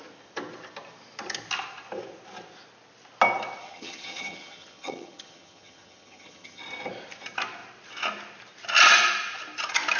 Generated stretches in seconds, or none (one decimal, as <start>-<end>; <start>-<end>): 3.6-6.6